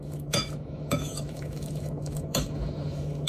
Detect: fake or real fake